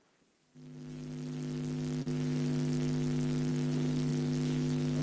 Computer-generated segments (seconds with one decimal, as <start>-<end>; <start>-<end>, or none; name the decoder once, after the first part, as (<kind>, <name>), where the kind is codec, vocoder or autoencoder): none